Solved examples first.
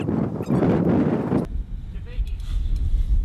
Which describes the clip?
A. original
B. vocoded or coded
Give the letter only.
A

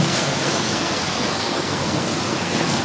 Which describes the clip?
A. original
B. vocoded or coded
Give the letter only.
B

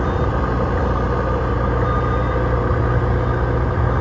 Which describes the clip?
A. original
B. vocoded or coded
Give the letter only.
A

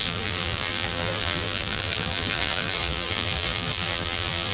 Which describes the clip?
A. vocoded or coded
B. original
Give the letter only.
A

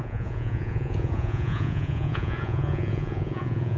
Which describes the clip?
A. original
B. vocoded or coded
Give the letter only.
B